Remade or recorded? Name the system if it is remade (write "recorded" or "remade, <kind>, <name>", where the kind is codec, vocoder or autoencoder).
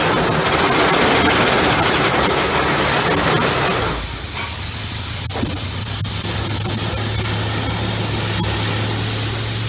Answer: recorded